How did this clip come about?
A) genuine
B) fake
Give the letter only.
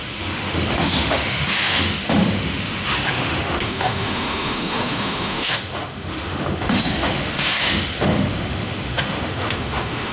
B